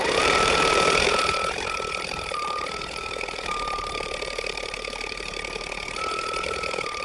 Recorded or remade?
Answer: remade